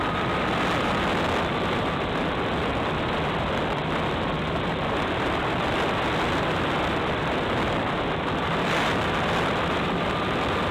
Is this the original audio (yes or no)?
no